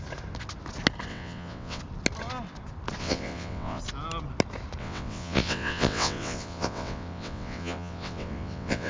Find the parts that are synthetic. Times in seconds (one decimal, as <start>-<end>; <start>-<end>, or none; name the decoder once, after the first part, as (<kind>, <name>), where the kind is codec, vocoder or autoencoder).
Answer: 1.1-1.8 (vocoder, WaveNeXt); 3.0-3.8; 4.8-8.9